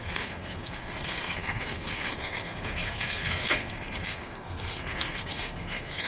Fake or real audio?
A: fake